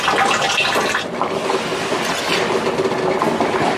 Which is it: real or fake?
real